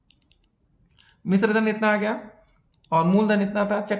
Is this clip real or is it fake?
real